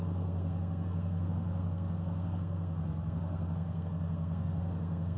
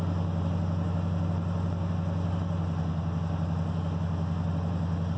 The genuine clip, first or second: second